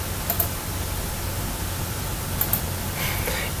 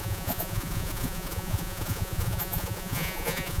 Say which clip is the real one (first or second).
first